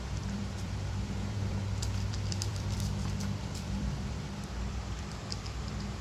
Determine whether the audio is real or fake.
fake